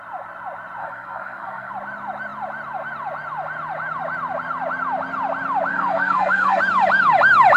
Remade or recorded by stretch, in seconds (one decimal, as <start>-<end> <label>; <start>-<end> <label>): 0.0-0.8 recorded; 0.8-1.7 remade; 1.7-5.7 recorded; 5.7-6.6 remade; 6.6-7.6 recorded